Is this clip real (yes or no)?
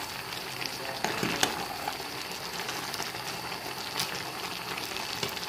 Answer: yes